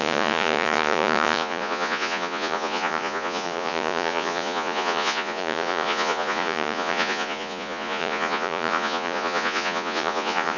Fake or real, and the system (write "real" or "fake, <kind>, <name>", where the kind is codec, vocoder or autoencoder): fake, vocoder, Vocos